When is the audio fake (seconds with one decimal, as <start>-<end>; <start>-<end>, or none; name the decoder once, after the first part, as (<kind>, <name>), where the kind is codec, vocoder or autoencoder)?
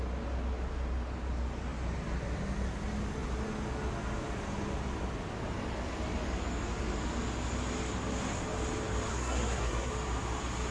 9.1-9.9 (codec, SNAC)